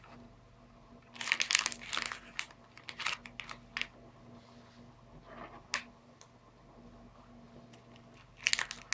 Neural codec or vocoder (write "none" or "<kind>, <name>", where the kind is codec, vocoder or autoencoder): none